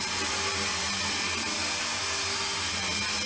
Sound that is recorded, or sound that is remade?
recorded